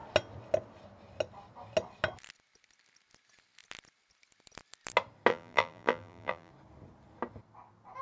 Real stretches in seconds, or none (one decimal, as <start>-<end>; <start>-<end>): 0.0-5.3; 6.5-8.0